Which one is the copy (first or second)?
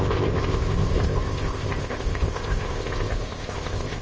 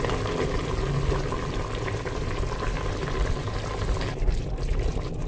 first